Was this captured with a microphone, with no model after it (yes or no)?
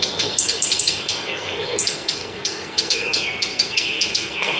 no